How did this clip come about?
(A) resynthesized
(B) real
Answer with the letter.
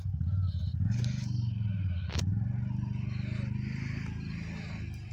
B